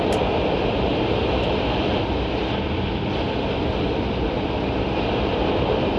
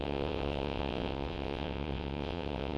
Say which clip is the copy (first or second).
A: second